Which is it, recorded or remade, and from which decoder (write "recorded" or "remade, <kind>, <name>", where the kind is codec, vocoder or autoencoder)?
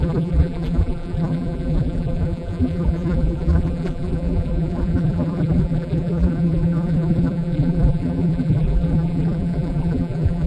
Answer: remade, vocoder, BigVGAN v2